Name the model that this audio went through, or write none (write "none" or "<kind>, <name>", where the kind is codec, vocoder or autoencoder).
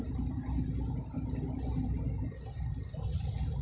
none